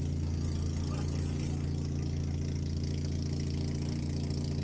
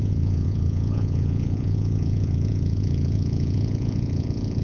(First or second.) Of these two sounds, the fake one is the second